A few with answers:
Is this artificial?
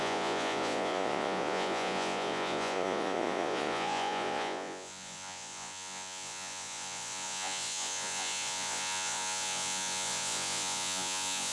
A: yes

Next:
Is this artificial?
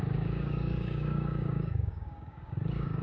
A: yes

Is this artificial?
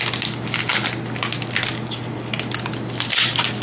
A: no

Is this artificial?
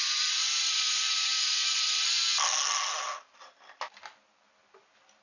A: no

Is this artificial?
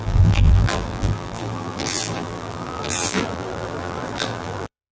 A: yes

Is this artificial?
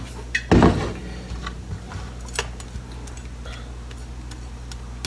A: no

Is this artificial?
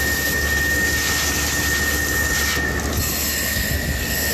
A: no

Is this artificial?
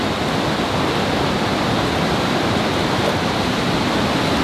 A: no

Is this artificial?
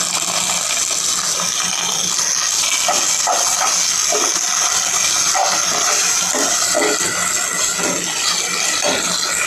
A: no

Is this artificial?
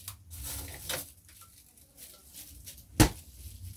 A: no